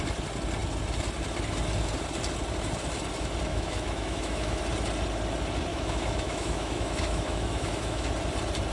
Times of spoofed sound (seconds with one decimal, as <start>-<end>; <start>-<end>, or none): 3.5-4.6; 5.7-8.1